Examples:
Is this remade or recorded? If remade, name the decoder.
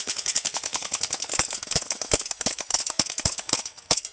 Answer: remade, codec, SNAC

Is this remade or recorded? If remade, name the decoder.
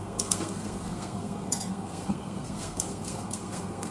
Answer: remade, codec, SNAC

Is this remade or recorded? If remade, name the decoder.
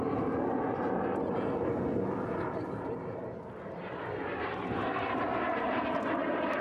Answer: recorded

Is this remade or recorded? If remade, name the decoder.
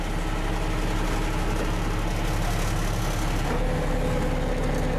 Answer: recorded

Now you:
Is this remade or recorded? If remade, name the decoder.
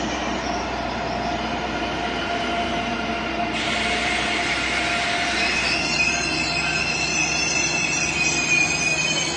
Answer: recorded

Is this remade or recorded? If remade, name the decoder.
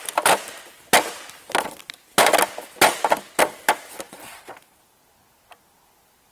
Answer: recorded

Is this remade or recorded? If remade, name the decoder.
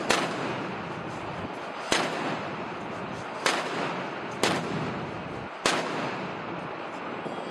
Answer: recorded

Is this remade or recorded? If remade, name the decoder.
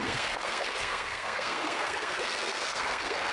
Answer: remade, codec, SNAC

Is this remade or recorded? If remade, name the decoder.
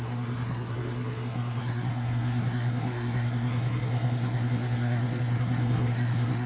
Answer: remade, codec, SNAC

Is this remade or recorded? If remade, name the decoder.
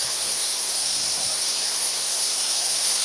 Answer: remade, codec, SNAC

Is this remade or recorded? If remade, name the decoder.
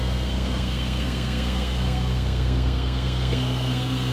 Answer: remade, codec, SNAC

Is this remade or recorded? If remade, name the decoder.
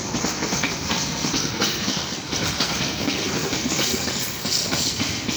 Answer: remade, codec, SNAC